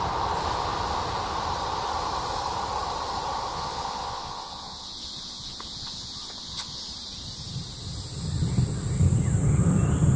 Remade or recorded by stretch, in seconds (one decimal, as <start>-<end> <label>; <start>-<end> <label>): 0.0-3.5 recorded; 3.5-6.8 remade; 6.8-10.2 recorded